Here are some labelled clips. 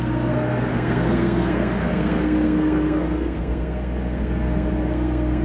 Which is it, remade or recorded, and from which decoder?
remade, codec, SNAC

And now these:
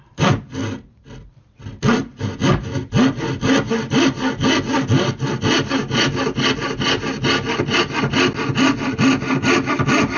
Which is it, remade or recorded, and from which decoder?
recorded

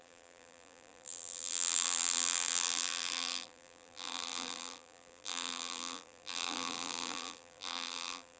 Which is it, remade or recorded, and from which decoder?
remade, vocoder, BigVGAN v2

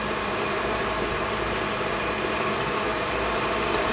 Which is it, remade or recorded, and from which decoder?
remade, vocoder, BigVGAN v2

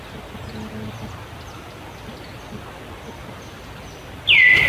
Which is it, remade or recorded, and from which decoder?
recorded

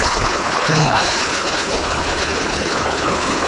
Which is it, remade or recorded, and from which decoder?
remade, codec, HILCodec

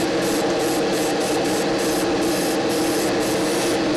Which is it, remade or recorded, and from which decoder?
recorded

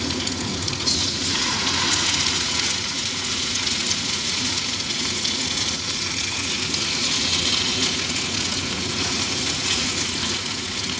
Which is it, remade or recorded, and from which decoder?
remade, vocoder, Vocos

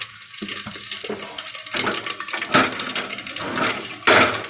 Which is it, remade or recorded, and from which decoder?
recorded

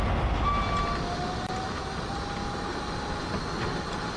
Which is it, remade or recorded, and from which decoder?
recorded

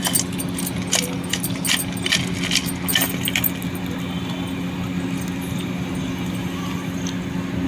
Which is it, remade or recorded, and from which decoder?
recorded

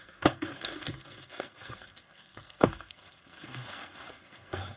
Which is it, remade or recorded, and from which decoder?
remade, codec, SNAC